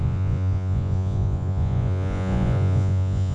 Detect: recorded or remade remade